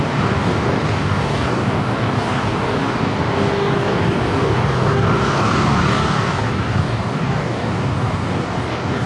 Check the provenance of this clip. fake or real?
fake